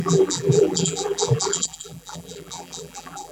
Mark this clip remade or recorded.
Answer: remade